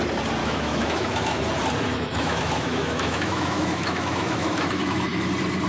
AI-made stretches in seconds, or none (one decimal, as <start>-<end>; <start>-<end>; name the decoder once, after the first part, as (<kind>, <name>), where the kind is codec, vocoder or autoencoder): 0.4-1.4 (autoencoder, DAC-VAE); 1.9-5.3